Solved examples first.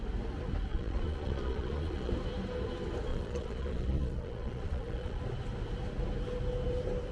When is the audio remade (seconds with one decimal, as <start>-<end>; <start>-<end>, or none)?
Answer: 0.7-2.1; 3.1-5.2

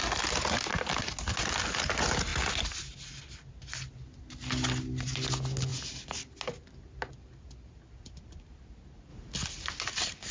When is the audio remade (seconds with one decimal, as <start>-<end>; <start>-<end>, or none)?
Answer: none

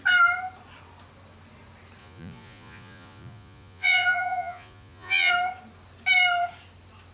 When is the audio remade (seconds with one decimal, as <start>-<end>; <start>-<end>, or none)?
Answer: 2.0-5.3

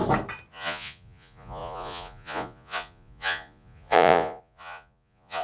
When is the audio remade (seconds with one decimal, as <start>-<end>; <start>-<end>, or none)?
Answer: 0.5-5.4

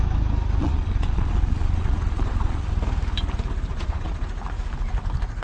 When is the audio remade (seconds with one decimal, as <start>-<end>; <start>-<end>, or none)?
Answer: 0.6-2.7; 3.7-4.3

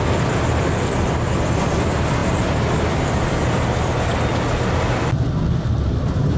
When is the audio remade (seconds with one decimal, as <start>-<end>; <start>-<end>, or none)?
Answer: none